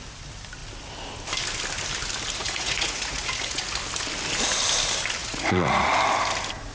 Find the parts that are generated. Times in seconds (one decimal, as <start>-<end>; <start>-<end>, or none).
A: 2.4-3.6; 5.2-5.9